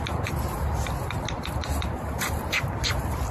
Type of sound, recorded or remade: remade